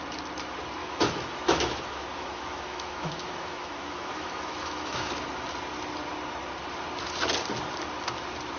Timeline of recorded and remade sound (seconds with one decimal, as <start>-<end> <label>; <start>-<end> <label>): 0.0-0.8 recorded; 0.8-5.1 remade; 5.1-8.6 recorded